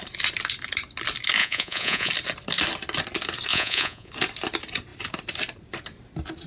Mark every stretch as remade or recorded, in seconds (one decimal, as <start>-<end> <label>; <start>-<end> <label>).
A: 0.0-1.4 recorded; 1.4-2.1 remade; 2.1-3.5 recorded; 3.5-4.1 remade; 4.1-6.5 recorded